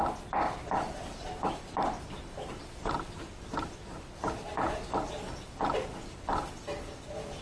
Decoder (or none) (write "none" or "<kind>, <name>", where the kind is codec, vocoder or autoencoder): none